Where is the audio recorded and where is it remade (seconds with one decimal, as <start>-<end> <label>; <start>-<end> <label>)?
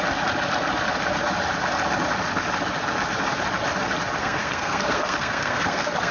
0.0-4.2 recorded; 4.2-6.1 remade